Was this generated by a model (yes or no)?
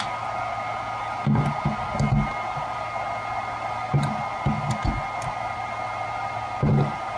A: no